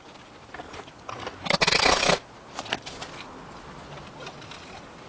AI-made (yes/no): no